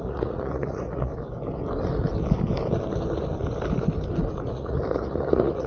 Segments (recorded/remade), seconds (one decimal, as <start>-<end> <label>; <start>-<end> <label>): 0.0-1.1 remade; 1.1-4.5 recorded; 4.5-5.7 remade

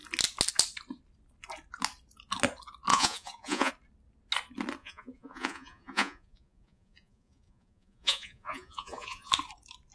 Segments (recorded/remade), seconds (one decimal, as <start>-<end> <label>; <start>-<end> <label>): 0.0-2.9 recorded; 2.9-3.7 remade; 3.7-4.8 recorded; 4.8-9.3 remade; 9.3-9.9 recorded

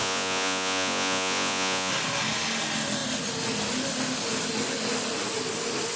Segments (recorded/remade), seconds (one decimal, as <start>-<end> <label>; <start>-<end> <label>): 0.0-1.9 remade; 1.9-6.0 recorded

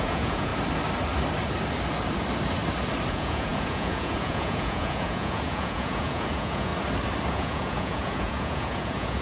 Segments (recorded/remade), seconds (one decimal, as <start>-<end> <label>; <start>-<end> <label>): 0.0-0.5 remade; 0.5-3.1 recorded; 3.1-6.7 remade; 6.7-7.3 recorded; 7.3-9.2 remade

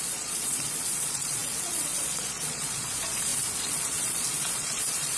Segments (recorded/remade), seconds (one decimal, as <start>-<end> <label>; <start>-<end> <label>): 0.0-5.2 remade

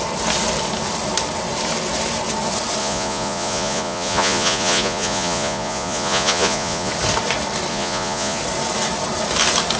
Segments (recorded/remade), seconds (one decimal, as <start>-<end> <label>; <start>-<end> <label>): 0.0-2.8 recorded; 2.8-6.9 remade; 6.9-7.7 recorded; 7.7-8.4 remade; 8.4-9.8 recorded